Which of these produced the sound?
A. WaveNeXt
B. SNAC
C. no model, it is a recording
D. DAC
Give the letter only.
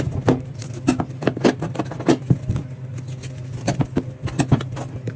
C